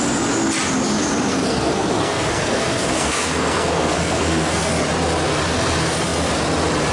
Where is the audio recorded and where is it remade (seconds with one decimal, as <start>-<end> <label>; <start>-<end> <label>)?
0.0-1.3 recorded; 1.3-4.7 remade; 4.7-6.9 recorded